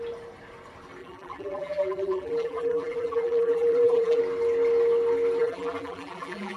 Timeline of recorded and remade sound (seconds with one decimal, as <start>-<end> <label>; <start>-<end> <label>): 0.0-1.0 recorded; 1.0-4.2 remade; 4.2-5.4 recorded; 5.4-6.6 remade